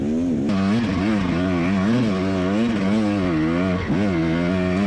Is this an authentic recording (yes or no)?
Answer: yes